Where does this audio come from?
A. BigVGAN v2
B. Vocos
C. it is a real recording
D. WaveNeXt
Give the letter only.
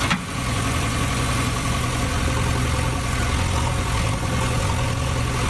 B